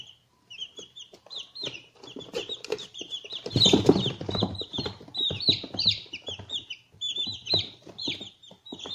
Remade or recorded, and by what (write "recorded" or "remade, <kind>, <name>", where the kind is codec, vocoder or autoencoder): remade, vocoder, BigVGAN v2